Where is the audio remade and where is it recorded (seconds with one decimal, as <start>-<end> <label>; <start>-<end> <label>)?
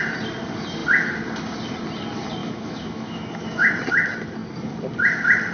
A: 0.0-2.4 recorded; 2.4-3.7 remade; 3.7-5.5 recorded